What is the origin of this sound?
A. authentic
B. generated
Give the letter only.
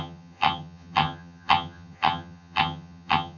B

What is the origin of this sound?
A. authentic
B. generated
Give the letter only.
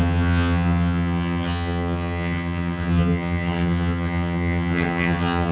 B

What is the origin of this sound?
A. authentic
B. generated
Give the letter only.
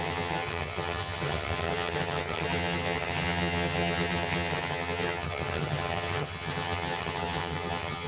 B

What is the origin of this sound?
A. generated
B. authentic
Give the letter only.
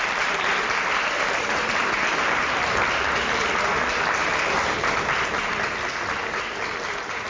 B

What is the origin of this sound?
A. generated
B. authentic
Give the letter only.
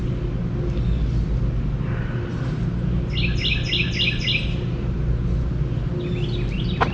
B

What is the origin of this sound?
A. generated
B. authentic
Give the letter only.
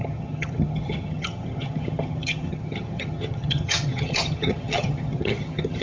A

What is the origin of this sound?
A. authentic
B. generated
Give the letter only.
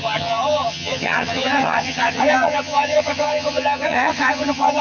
B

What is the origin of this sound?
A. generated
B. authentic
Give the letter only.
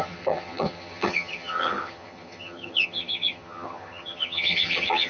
A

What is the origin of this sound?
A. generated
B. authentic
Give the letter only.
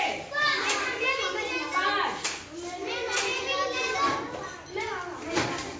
B